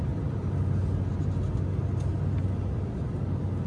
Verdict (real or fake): real